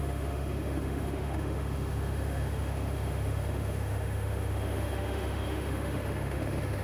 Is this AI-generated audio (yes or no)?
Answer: yes